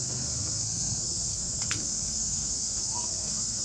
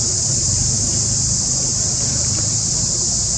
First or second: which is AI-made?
first